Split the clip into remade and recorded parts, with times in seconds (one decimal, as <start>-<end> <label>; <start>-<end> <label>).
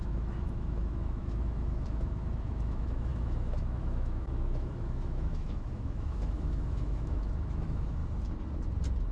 0.0-8.0 remade; 8.0-9.1 recorded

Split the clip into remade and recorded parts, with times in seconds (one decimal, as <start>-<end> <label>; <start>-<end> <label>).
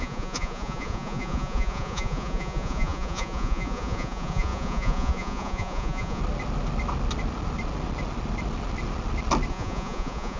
0.0-6.2 remade; 6.2-9.5 recorded; 9.5-10.4 remade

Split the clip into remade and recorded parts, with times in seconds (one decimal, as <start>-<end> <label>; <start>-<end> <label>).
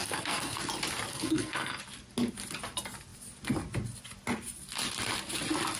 0.0-0.6 remade; 0.6-1.1 recorded; 1.1-1.8 remade; 1.8-5.8 recorded